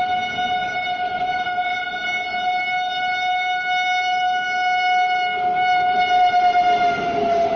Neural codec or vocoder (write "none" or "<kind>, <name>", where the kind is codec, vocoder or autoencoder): none